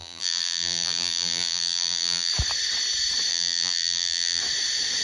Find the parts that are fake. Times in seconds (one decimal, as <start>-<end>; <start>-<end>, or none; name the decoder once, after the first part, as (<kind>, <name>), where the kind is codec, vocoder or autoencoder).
0.0-2.3 (vocoder, BigVGAN v2); 3.3-4.4